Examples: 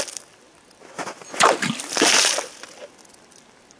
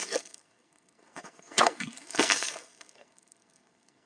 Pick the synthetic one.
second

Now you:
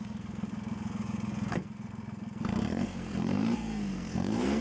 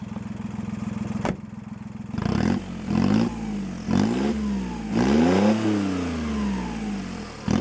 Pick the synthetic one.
first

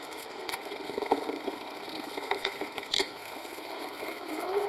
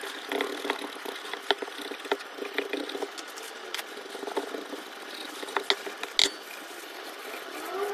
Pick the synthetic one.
first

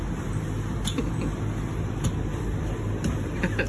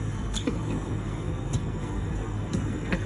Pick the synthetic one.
second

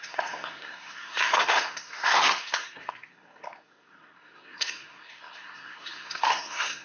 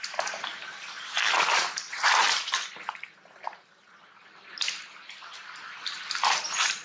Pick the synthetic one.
first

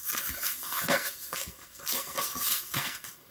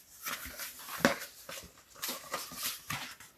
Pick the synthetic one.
first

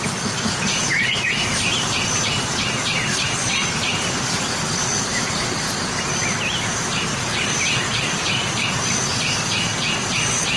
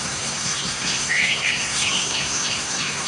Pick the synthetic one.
second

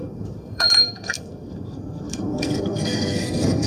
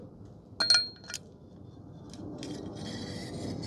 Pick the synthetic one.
first